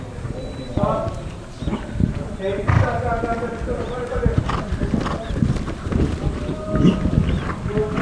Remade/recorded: recorded